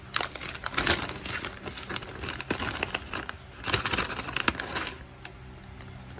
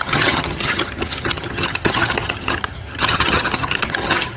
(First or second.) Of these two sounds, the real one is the first